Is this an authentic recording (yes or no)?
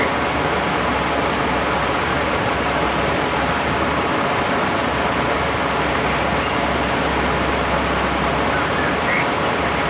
yes